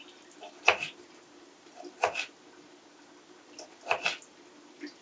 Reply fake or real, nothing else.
real